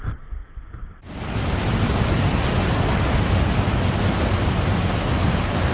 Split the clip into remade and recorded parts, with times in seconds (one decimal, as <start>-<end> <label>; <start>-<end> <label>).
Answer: 0.0-5.7 recorded